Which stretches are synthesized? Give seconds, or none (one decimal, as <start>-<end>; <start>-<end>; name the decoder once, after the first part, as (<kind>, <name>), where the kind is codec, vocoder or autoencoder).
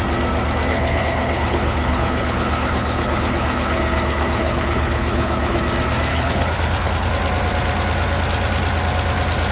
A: 0.7-5.6 (codec, HILCodec); 6.1-7.1